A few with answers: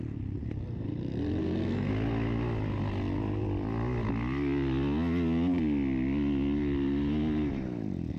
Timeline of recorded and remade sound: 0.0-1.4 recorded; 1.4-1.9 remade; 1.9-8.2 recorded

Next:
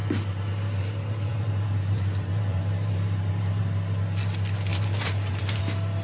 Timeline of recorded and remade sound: 0.0-3.6 remade; 3.6-4.7 recorded; 4.7-5.6 remade; 5.6-6.0 recorded

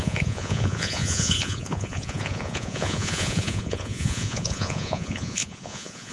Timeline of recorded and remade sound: 0.0-6.1 remade

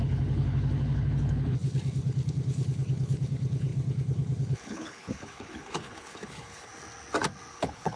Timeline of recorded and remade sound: 0.0-6.7 remade; 6.7-7.5 recorded; 7.5-8.0 remade